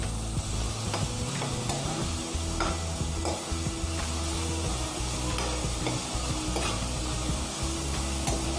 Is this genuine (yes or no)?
yes